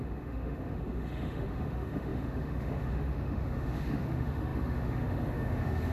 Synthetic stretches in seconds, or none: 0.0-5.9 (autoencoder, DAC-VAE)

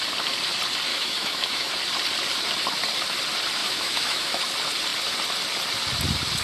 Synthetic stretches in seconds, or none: 0.9-1.7 (autoencoder, DAC-VAE); 3.6-4.4

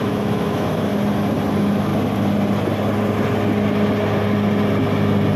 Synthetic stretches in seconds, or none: 0.0-0.9 (autoencoder, DAC-VAE); 1.5-1.9

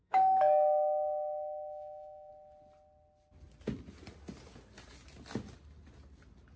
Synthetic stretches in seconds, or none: 0.0-2.3 (autoencoder, DAC-VAE)

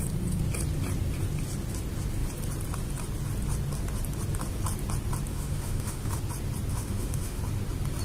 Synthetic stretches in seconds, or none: 5.3-6.2 (autoencoder, DAC-VAE); 6.7-7.4

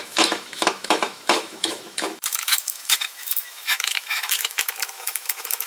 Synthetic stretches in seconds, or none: 0.0-5.7 (autoencoder, DAC-VAE)